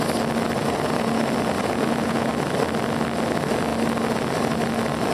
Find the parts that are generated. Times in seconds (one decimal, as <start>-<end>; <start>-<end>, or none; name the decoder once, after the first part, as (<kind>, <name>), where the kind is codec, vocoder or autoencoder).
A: 0.6-1.2 (vocoder, Vocos); 1.6-2.3